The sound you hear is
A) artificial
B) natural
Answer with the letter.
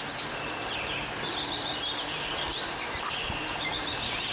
A